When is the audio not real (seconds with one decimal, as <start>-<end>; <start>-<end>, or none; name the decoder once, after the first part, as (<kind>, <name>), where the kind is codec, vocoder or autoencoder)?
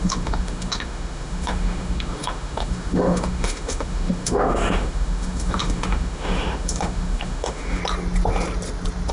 0.0-7.8 (autoencoder, DAC-VAE)